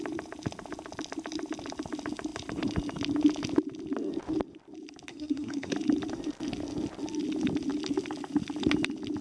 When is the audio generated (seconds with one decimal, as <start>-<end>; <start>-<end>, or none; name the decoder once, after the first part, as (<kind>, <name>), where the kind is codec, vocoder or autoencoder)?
5.1-5.7 (codec, SNAC)